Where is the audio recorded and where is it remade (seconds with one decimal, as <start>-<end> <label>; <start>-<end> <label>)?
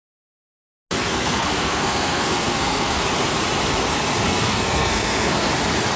0.0-1.0 recorded; 1.0-3.0 remade; 3.0-4.3 recorded; 4.3-5.5 remade; 5.5-6.0 recorded